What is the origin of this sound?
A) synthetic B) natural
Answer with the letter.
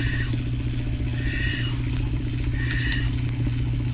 B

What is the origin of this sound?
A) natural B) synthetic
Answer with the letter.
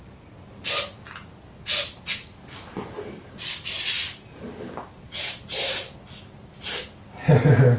A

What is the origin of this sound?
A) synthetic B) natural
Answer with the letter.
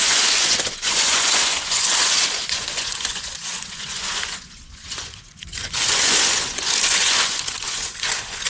A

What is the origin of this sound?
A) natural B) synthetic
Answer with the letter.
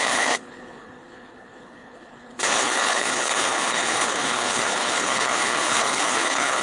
B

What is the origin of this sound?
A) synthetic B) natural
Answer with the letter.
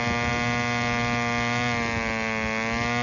B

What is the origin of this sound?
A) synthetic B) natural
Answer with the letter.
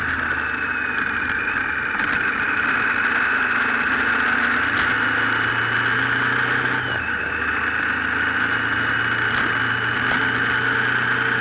B